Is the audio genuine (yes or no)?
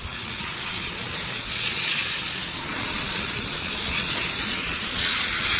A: no